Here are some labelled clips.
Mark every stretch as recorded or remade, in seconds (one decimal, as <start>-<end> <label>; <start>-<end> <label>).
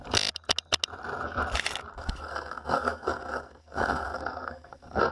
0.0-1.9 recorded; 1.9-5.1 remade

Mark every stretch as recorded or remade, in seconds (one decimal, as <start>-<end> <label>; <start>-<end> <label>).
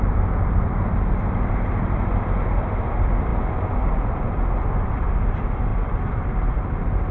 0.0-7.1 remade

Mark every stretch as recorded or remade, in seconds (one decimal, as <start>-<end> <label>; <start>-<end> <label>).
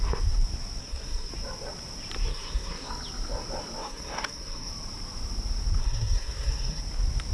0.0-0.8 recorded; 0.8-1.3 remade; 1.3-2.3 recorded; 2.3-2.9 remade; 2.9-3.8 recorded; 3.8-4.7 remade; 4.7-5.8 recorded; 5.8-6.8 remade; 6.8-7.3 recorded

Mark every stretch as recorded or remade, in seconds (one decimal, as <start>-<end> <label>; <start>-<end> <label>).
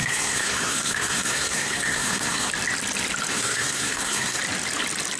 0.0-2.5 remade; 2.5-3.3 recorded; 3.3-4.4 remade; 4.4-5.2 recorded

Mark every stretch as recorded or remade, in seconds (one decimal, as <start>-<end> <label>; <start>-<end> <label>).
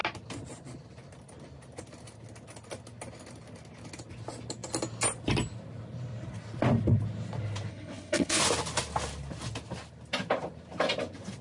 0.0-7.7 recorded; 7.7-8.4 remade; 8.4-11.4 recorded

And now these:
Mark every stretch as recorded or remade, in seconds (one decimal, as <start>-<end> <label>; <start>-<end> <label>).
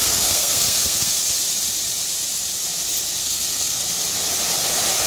0.0-1.2 remade; 1.2-3.2 recorded; 3.2-3.8 remade; 3.8-5.1 recorded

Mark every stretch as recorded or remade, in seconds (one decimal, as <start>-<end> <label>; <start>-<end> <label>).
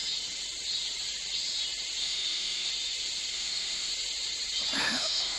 0.0-2.0 recorded; 2.0-2.7 remade; 2.7-3.3 recorded; 3.3-3.9 remade; 3.9-4.8 recorded; 4.8-5.4 remade